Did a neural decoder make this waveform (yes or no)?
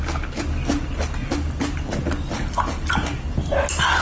no